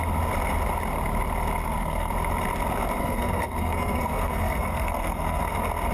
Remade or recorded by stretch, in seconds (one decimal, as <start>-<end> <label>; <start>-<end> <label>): 0.0-1.6 recorded; 1.6-2.1 remade; 2.1-3.0 recorded; 3.0-5.4 remade; 5.4-5.9 recorded